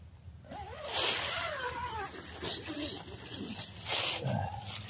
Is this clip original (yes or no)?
yes